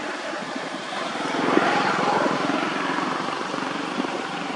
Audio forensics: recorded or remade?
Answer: remade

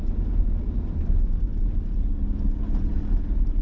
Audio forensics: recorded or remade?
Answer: recorded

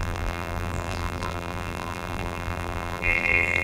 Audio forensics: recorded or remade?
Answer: remade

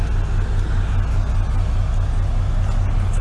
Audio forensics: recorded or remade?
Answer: recorded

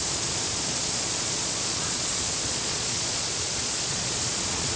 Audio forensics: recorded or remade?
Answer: remade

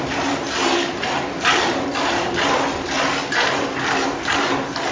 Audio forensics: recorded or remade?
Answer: recorded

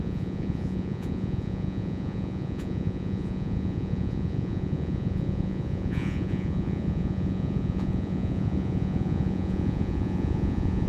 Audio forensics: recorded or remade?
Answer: remade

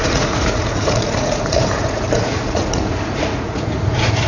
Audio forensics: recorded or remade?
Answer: remade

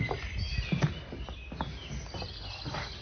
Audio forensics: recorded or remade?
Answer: recorded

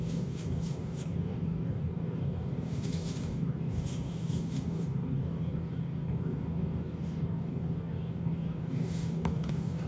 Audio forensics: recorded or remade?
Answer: remade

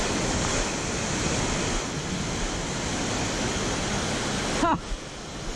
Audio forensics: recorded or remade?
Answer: recorded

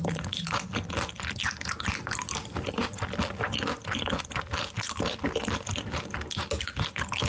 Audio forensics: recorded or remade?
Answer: recorded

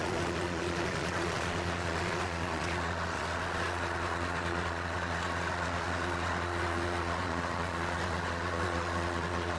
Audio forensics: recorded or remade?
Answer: remade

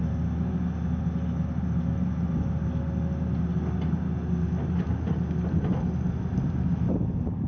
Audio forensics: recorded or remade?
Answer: recorded